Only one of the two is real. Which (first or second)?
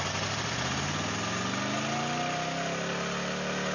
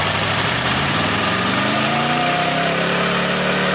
first